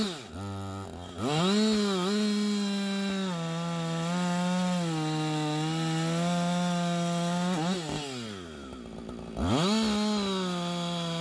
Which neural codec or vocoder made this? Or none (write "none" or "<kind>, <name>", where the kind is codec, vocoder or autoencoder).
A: none